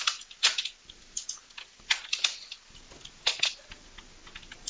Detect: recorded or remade recorded